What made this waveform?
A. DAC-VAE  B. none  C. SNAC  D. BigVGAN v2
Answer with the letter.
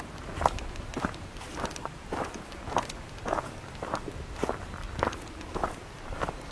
B